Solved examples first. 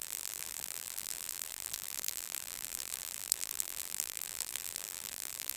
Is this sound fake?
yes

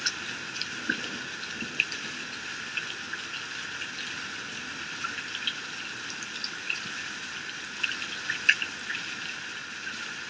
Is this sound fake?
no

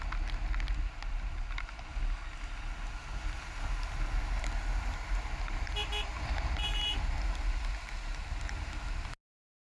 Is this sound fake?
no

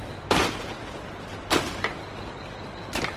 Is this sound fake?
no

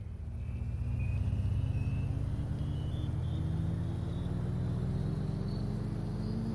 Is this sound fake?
no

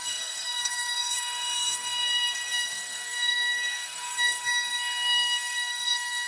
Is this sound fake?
yes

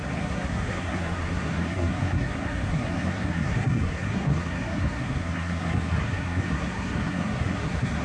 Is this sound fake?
yes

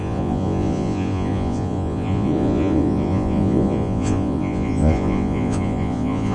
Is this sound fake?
yes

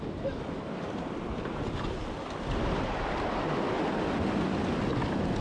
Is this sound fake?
no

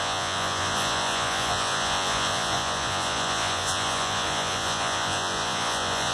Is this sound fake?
yes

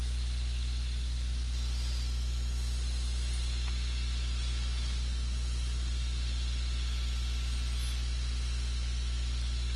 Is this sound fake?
no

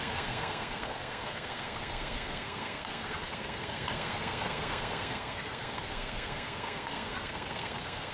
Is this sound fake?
yes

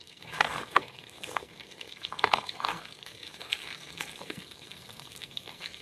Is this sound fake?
yes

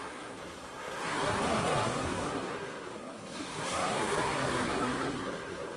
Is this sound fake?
yes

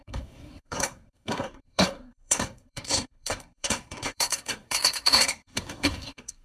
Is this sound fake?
yes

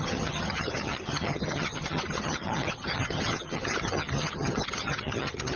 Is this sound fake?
yes